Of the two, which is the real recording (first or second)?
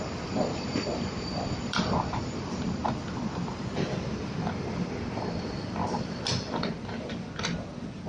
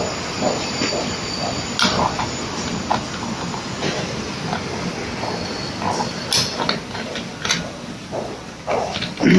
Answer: second